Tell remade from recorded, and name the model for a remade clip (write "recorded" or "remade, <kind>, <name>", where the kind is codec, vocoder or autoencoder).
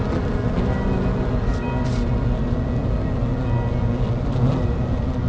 recorded